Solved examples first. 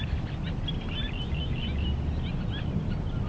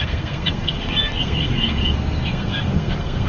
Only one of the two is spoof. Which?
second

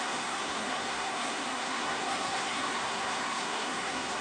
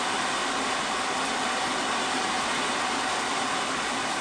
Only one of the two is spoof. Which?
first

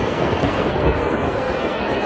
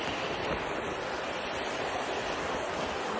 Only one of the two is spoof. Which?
first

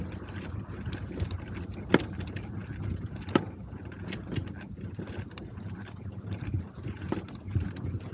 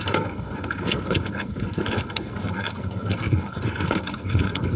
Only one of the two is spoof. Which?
second